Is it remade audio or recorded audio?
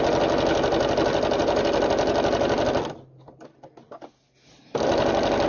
recorded